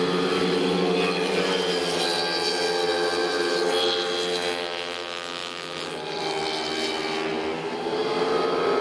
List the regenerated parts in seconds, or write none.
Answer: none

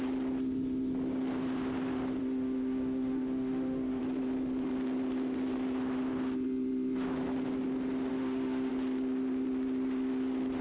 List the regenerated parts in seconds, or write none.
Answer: 2.2-4.0; 8.1-8.7

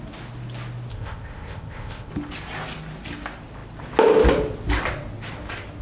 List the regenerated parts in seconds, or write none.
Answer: 0.9-2.1

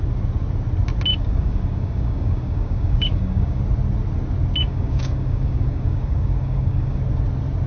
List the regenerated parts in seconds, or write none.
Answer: 1.1-3.6; 4.6-7.0

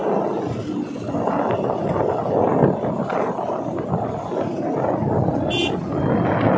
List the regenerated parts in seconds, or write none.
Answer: none